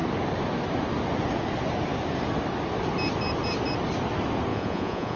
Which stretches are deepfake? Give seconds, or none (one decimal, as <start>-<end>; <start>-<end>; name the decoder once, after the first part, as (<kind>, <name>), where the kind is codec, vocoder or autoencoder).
4.5-5.2 (vocoder, Vocos)